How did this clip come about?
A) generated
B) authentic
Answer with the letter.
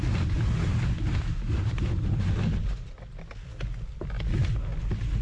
B